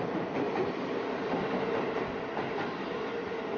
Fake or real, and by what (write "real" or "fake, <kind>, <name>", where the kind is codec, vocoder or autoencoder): real